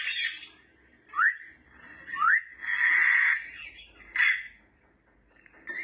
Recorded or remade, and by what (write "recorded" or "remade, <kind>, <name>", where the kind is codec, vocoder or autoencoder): recorded